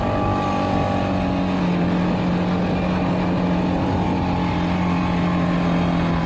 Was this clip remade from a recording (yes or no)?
no